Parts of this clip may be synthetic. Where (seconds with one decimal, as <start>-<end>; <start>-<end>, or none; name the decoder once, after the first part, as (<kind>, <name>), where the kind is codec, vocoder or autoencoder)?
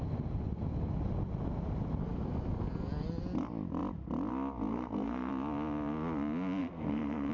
4.7-5.3 (codec, SNAC); 6.6-7.3